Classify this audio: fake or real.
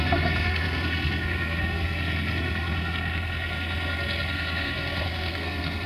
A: fake